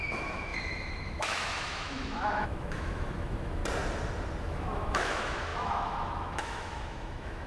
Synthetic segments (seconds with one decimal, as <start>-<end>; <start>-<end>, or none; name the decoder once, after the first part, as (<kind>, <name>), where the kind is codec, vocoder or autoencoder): 0.0-3.6 (autoencoder, DAC-VAE); 4.4-7.5

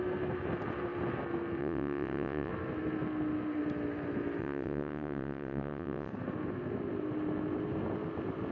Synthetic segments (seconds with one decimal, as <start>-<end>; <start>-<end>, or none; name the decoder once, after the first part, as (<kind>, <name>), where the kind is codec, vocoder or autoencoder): 1.6-2.5 (vocoder, WaveNeXt); 4.4-6.1